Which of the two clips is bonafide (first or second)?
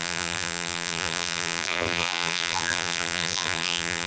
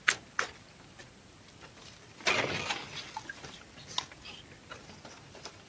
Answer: second